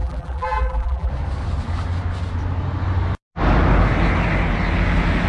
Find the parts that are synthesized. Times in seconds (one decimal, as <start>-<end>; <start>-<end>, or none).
0.0-1.1